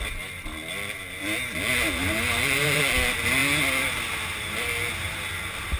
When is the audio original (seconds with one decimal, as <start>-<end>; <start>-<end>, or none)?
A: 0.0-2.0; 2.8-5.8